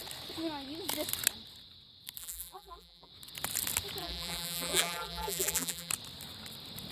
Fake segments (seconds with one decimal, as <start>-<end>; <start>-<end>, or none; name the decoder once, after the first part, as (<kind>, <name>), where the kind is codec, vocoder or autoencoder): 2.2-3.1 (vocoder, BigVGAN v2); 4.0-5.9